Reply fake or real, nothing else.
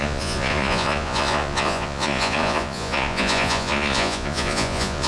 fake